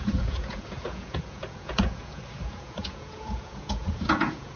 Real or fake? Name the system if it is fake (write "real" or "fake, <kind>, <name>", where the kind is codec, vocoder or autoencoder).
fake, vocoder, Vocos